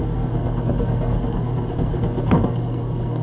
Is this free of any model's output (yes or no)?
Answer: no